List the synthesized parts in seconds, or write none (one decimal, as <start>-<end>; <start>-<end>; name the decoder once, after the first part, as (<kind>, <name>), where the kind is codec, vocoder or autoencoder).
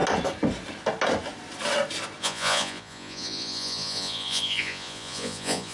2.2-5.7 (vocoder, Vocos)